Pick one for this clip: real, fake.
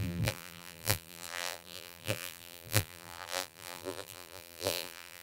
fake